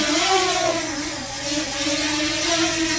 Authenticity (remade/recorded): remade